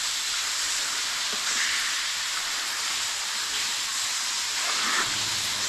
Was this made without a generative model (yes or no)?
yes